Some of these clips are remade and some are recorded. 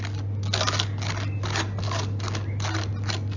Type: recorded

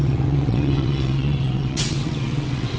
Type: remade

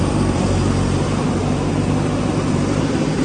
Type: remade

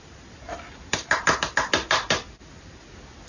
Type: recorded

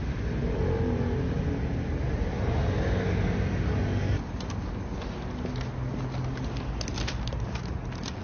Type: recorded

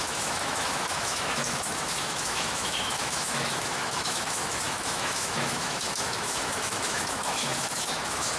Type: remade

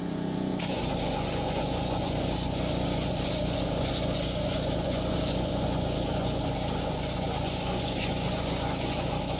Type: remade